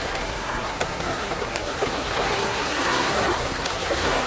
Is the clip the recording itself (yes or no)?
no